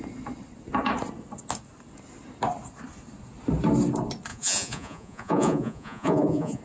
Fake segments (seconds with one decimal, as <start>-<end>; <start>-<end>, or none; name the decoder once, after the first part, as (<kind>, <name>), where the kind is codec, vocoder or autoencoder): 4.3-6.6 (vocoder, Vocos)